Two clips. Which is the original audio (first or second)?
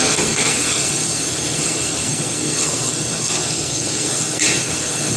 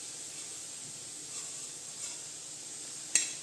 second